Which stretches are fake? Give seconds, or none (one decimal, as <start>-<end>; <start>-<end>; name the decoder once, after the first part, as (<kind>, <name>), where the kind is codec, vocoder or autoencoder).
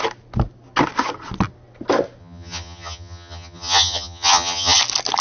2.2-4.8 (vocoder, HiFi-GAN)